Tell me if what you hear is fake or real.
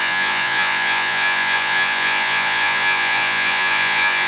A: fake